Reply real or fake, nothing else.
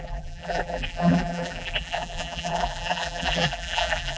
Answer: fake